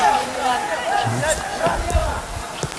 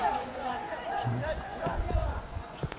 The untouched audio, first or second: first